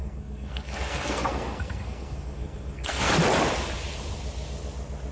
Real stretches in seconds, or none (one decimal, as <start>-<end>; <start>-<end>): 3.1-5.1